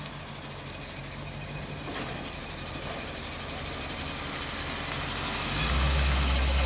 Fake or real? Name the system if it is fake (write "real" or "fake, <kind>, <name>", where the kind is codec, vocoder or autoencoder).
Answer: real